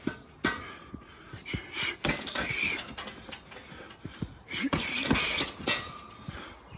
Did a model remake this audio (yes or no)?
no